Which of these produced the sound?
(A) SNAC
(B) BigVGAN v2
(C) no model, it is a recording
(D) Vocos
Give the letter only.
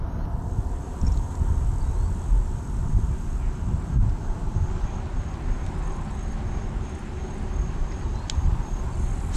C